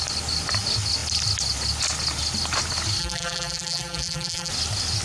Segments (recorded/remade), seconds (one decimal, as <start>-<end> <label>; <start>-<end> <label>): 0.0-3.0 recorded; 3.0-4.5 remade; 4.5-5.0 recorded